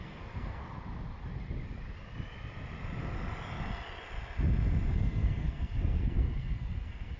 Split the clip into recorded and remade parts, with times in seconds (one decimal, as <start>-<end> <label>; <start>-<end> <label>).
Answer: 0.0-0.6 remade; 0.6-4.9 recorded; 4.9-7.2 remade